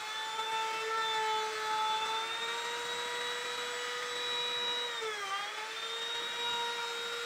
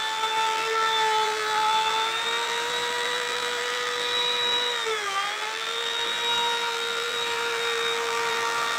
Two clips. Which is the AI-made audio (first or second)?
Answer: second